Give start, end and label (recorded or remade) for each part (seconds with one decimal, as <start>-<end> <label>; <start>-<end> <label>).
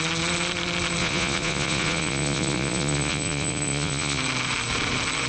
0.0-1.0 recorded; 1.0-4.2 remade; 4.2-5.3 recorded